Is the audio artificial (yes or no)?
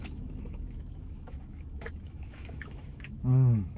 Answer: yes